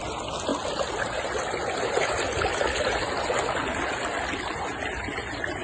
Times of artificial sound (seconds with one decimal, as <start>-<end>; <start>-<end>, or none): none